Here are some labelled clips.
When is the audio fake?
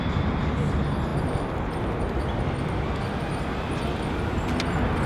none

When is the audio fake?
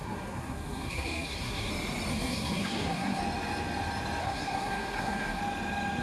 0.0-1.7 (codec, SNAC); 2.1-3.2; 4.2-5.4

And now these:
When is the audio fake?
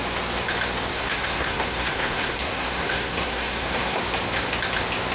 0.9-4.0 (codec, SNAC)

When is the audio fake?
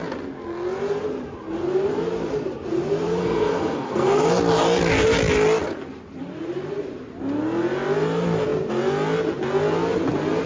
3.2-4.3 (codec, SNAC)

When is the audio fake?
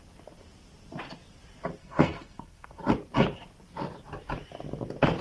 1.8-2.8 (codec, SNAC)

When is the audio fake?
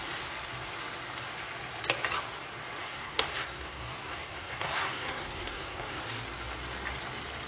2.8-6.0 (codec, SNAC)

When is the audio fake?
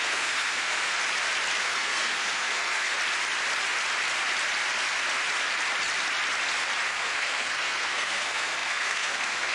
0.0-1.0 (codec, SNAC); 1.6-3.0; 6.9-9.5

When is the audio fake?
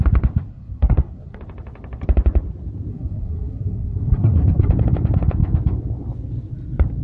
0.5-1.4 (codec, SNAC); 2.9-4.7